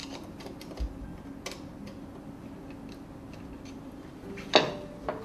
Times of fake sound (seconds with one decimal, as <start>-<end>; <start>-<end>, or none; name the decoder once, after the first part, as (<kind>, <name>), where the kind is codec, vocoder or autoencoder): none